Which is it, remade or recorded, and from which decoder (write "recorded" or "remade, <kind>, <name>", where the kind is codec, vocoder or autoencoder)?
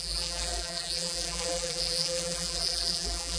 remade, vocoder, BigVGAN v2